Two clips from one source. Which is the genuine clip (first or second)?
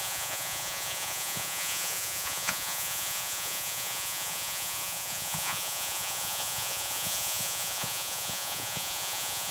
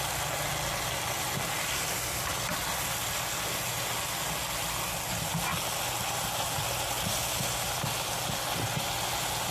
second